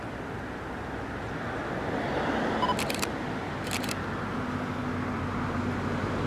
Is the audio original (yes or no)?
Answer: yes